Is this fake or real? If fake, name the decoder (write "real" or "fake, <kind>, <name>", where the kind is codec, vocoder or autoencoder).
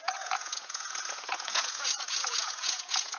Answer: fake, vocoder, Vocos